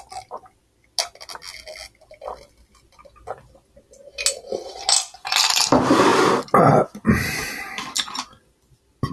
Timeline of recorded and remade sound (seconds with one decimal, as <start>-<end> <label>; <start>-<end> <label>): 0.0-9.1 recorded